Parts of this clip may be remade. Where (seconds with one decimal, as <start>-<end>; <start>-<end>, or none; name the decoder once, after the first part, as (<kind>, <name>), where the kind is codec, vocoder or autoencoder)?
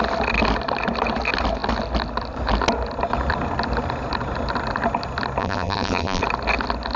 5.4-6.2 (vocoder, BigVGAN v2)